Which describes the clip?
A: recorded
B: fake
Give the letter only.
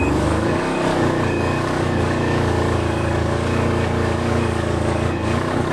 B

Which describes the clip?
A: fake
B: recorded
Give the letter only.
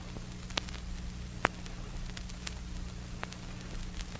B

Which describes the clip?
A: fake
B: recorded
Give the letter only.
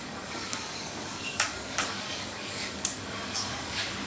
A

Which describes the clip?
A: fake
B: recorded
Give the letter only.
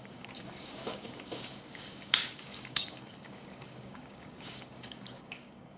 A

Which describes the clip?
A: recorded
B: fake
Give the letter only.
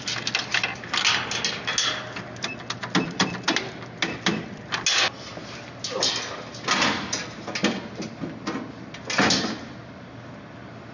A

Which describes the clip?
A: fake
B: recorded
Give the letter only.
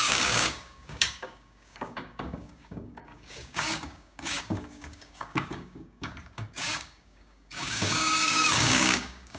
A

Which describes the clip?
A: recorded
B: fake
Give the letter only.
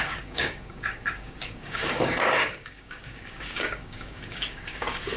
B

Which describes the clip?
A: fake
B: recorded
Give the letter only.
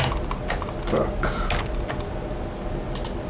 B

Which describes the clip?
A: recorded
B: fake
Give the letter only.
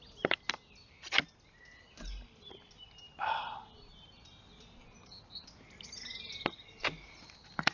A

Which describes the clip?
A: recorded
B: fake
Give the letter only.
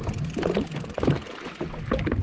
A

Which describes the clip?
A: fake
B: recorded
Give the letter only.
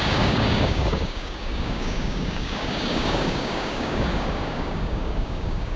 A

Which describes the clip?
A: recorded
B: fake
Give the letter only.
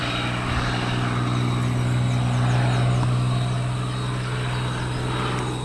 A